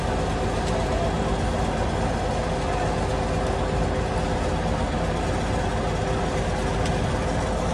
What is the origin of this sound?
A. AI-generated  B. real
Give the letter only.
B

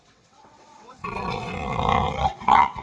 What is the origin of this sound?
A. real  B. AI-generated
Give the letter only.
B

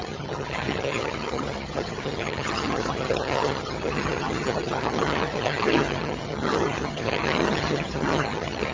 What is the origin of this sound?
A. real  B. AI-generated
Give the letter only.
B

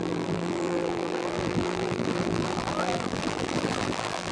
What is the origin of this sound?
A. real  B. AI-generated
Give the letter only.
B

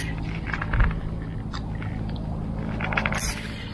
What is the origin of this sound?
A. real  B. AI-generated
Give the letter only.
A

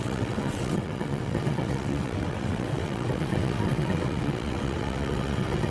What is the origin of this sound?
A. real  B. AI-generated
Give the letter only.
B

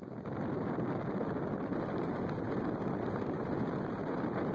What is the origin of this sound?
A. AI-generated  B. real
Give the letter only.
A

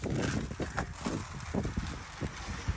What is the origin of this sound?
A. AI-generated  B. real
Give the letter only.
B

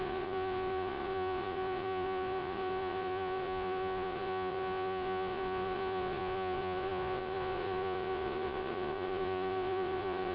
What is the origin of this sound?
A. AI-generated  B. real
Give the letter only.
A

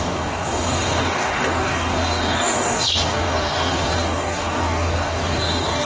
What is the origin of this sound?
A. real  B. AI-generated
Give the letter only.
B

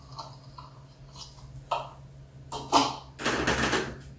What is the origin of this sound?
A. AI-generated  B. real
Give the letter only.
B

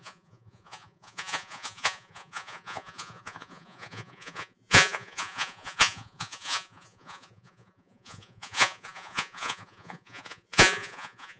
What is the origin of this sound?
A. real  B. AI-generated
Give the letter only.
B